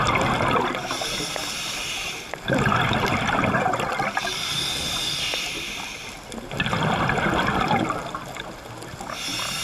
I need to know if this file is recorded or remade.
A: recorded